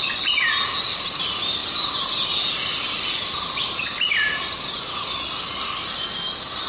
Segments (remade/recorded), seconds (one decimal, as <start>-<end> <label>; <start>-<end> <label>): 0.0-6.7 recorded